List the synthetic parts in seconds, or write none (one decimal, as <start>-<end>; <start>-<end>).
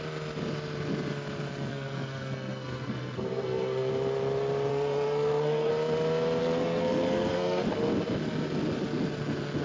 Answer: 1.7-3.9; 4.7-5.7; 6.4-7.6